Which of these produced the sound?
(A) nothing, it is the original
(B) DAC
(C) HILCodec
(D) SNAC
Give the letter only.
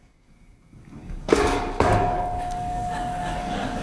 B